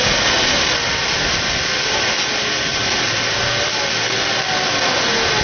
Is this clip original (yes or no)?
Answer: yes